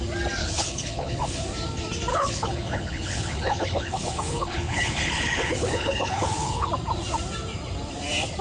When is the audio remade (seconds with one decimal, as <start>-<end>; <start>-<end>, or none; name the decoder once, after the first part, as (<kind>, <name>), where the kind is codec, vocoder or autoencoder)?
0.4-1.4 (codec, HILCodec); 2.1-6.7